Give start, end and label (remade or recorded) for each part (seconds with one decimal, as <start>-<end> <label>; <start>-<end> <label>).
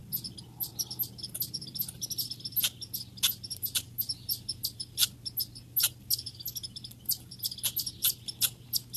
0.0-9.0 recorded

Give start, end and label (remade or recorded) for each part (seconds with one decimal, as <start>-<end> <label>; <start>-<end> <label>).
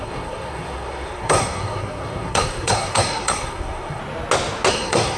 0.0-4.0 remade; 4.0-4.7 recorded; 4.7-5.2 remade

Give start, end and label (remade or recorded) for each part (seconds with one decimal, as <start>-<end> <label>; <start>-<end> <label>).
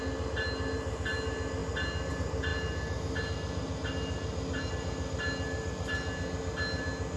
0.0-7.2 recorded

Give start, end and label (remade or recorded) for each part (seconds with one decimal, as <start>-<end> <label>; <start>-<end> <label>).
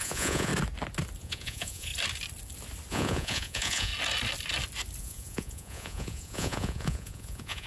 0.0-0.5 remade; 0.5-1.2 recorded; 1.2-1.9 remade; 1.9-2.9 recorded; 2.9-3.9 remade; 3.9-5.0 recorded; 5.0-7.7 remade